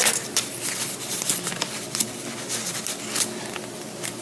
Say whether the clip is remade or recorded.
recorded